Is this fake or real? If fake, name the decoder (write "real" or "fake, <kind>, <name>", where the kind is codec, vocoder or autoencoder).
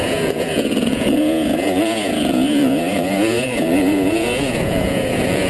fake, vocoder, Vocos